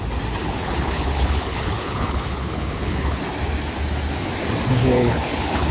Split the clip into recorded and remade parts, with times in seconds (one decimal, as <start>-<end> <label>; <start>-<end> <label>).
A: 0.0-0.4 recorded; 0.4-3.2 remade; 3.2-4.8 recorded; 4.8-5.7 remade